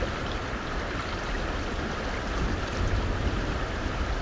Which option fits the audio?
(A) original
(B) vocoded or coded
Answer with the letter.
A